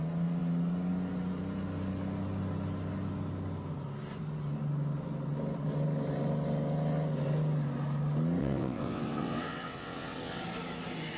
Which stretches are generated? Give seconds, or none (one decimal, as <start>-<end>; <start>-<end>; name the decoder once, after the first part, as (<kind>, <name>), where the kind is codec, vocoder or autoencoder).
8.4-10.4 (vocoder, WaveNeXt)

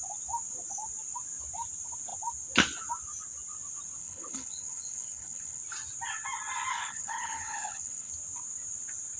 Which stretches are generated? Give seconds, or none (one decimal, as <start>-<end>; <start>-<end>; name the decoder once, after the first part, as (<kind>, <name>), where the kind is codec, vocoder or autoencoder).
4.0-5.6 (codec, HILCodec); 6.7-8.1

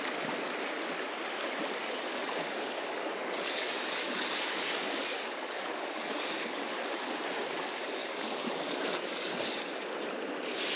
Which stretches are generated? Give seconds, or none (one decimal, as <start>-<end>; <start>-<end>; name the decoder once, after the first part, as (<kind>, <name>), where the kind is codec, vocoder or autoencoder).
1.8-6.7 (codec, DAC); 8.0-9.4

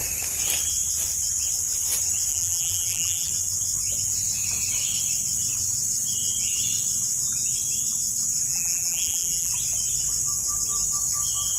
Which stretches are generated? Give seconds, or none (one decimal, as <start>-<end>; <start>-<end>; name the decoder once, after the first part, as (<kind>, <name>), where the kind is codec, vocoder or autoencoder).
2.3-3.3 (vocoder, BigVGAN v2); 8.5-9.5